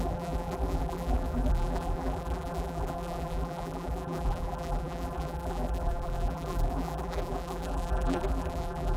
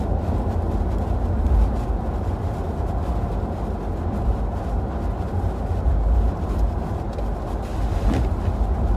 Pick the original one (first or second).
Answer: second